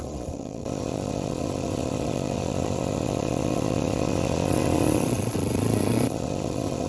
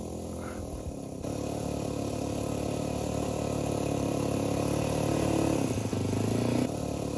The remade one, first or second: first